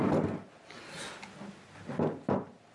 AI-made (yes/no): no